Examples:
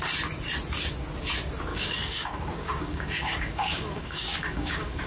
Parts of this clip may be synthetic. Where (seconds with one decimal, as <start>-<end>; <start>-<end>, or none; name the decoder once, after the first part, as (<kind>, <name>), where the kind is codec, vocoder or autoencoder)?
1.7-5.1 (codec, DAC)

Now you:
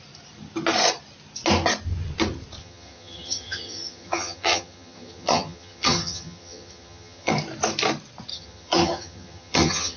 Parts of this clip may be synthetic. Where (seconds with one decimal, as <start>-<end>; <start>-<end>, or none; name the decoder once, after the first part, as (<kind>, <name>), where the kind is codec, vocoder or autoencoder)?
2.6-7.3 (vocoder, HiFi-GAN); 8.3-10.0

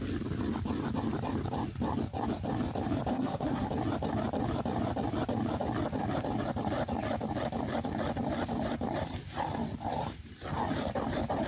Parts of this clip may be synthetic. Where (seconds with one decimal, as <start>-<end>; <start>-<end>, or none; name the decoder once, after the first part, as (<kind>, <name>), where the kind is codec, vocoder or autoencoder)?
3.1-3.7 (codec, SNAC)

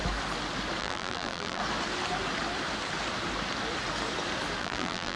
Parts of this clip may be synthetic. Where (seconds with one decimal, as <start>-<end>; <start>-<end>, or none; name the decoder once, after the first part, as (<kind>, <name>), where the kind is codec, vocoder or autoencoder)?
0.8-1.6 (vocoder, BigVGAN v2); 4.6-5.2

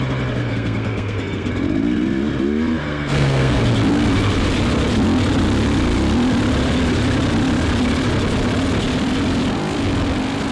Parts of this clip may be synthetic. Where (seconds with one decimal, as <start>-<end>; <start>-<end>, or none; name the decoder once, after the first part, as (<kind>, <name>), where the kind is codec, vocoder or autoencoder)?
0.4-1.5 (codec, SNAC); 2.8-3.6